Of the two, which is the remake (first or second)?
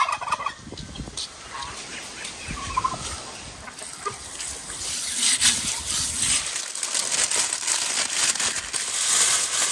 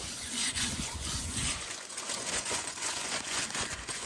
second